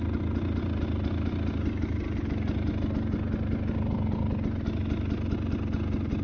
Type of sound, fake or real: real